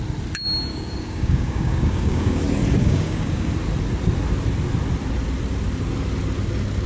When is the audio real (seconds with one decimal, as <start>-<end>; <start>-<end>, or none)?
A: 0.0-0.7; 2.4-2.8; 3.5-6.9